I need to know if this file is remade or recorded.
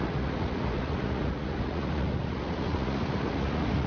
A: remade